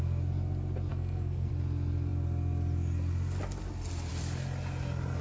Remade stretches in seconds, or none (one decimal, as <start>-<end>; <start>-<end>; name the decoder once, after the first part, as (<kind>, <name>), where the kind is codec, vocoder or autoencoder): 0.9-1.5 (codec, SNAC)